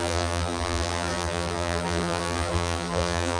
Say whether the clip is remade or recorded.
remade